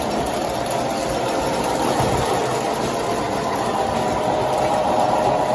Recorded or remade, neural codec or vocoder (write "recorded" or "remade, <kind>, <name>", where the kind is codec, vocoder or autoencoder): recorded